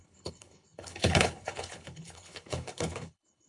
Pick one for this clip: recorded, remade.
remade